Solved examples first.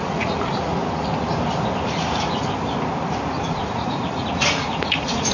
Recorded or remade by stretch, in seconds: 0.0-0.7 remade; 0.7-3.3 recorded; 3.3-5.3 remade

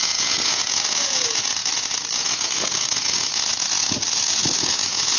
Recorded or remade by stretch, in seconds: 0.0-5.2 remade

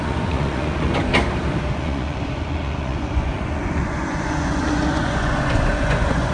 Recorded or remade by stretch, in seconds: 0.0-1.1 remade; 1.1-1.7 recorded; 1.7-6.3 remade

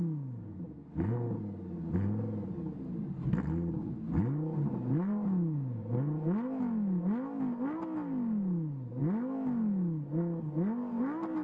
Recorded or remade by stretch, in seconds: 0.0-11.4 recorded

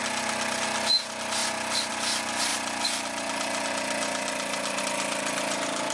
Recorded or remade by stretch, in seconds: 0.0-5.9 recorded

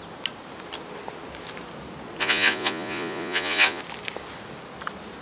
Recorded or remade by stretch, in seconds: 0.0-2.2 recorded; 2.2-3.8 remade; 3.8-5.2 recorded

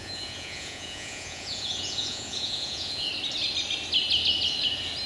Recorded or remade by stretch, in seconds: 0.0-3.1 remade; 3.1-5.1 recorded